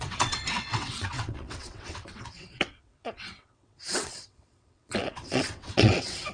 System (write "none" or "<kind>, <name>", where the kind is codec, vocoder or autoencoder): vocoder, WaveNeXt